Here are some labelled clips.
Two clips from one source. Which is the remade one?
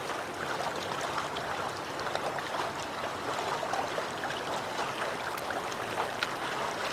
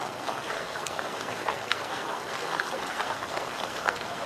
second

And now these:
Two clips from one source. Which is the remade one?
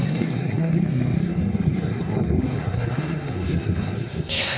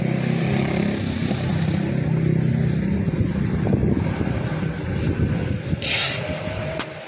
first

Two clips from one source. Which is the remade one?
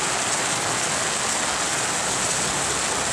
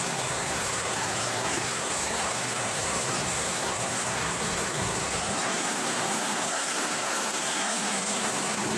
second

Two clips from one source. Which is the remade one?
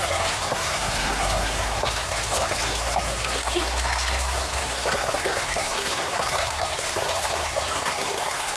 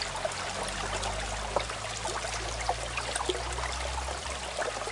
first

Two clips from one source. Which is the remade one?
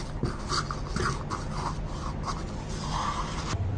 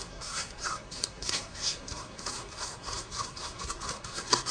second